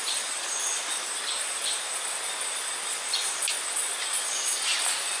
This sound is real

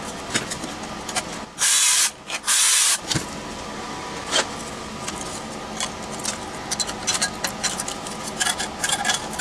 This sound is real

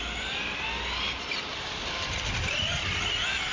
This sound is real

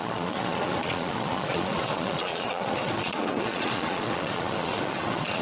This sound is fake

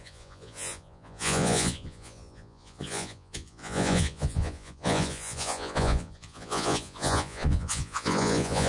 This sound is fake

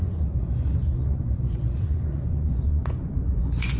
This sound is fake